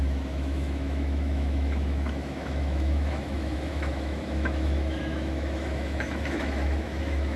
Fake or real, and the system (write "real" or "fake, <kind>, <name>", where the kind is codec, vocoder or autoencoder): fake, autoencoder, DAC-VAE